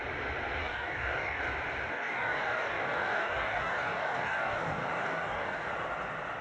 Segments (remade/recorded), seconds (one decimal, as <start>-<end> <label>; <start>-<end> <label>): 0.0-0.6 recorded; 0.6-1.4 remade; 1.4-1.9 recorded; 1.9-5.7 remade; 5.7-6.4 recorded